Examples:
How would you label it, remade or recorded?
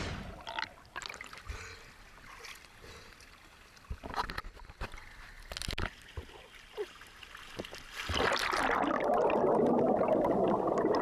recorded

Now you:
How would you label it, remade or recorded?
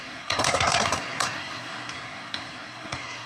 remade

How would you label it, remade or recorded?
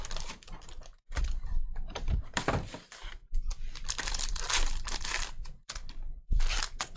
remade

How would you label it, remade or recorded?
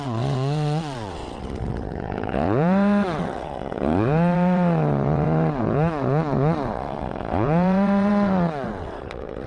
remade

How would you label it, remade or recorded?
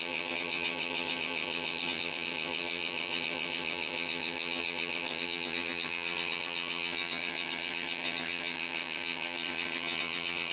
remade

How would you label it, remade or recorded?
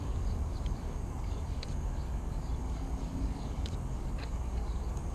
remade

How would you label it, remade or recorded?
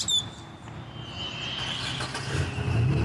recorded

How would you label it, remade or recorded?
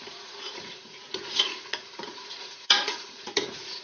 remade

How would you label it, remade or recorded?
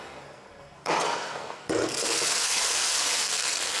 remade